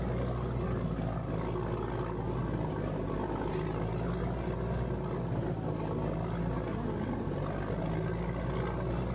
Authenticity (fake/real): real